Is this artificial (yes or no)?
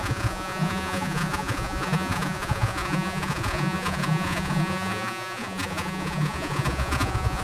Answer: yes